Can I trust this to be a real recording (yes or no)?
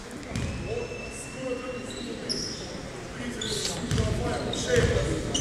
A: yes